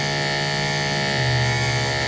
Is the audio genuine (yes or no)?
yes